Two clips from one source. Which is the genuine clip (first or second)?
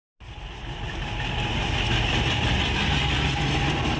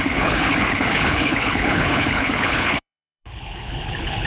first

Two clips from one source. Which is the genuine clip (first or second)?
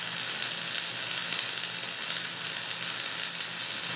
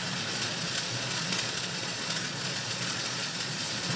first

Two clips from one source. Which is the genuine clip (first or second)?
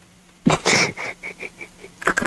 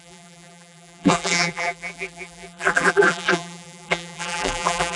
first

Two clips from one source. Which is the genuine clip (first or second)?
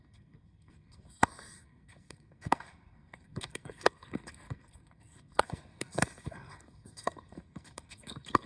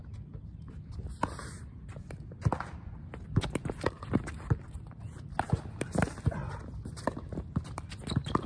second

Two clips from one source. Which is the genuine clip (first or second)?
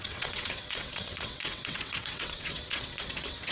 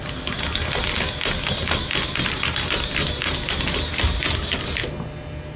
second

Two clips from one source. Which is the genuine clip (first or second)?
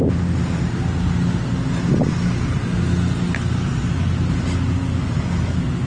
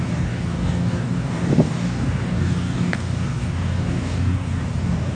first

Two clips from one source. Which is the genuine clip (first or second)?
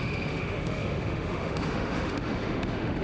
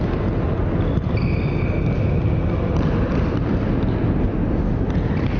second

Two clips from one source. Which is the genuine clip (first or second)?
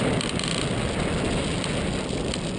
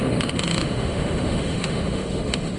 first